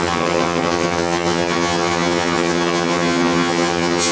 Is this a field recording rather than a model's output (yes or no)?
no